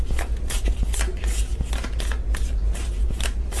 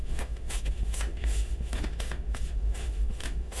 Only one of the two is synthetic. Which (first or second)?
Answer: second